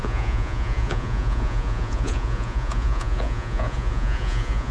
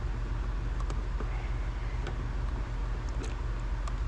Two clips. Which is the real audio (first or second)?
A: second